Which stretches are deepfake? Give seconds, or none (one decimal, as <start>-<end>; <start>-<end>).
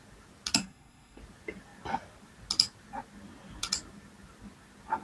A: 0.6-1.2